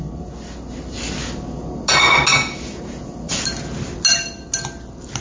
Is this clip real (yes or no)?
yes